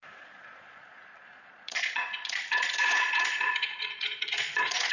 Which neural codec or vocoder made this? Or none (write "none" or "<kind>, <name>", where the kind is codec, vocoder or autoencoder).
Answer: vocoder, Vocos